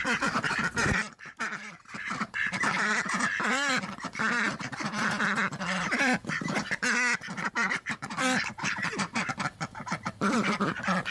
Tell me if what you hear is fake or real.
fake